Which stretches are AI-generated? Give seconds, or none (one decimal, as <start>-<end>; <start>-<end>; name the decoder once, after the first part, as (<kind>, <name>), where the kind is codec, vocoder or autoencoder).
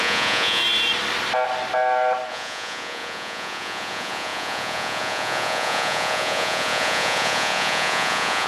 0.0-0.6 (vocoder, Vocos); 2.3-8.5